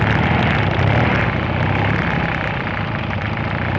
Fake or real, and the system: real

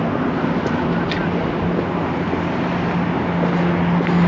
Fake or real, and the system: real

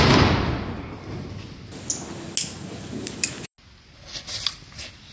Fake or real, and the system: real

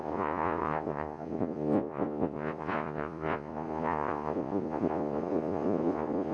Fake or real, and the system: fake, vocoder, Vocos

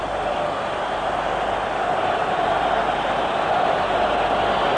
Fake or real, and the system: real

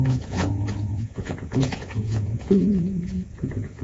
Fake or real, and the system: fake, vocoder, Vocos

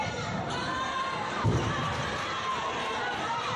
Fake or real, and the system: real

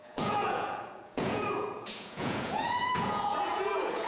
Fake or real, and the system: fake, vocoder, Vocos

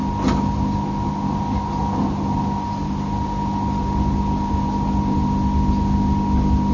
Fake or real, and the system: real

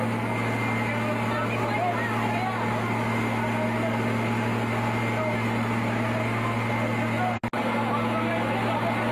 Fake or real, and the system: real